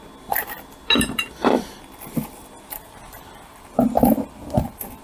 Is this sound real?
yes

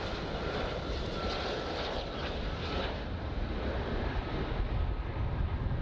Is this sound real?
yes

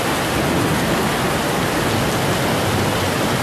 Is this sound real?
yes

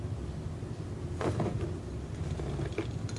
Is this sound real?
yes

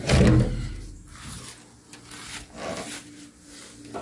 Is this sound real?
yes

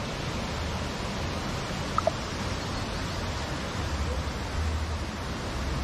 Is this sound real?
yes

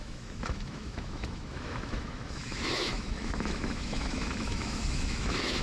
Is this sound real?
no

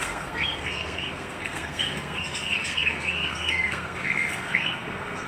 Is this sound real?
no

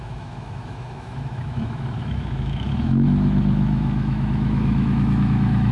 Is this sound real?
no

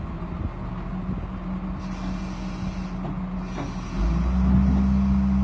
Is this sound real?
yes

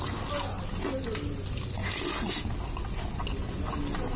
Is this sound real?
yes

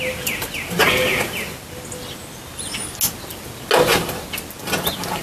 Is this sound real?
yes